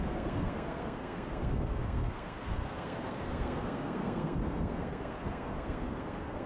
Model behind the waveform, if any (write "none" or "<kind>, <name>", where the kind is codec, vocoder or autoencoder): codec, SNAC